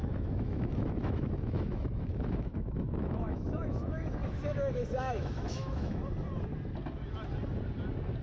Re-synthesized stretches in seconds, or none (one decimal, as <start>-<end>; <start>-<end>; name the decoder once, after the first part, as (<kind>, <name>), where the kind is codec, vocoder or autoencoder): 0.0-4.2 (autoencoder, DAC-VAE); 4.7-6.0